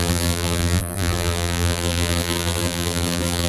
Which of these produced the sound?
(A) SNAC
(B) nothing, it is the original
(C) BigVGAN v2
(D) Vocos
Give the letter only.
C